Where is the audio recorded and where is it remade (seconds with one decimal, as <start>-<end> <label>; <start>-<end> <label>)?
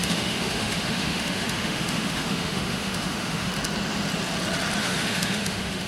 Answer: 0.0-3.5 remade; 3.5-4.8 recorded; 4.8-5.9 remade